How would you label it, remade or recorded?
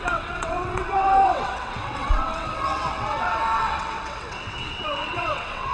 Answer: remade